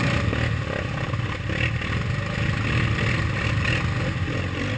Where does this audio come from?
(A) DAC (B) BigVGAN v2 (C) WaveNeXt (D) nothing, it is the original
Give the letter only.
D